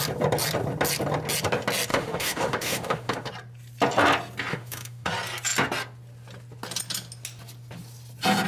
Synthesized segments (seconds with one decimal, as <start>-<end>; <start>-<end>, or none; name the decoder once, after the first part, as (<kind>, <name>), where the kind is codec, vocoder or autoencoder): 1.9-3.3 (autoencoder, DAC-VAE); 4.5-5.1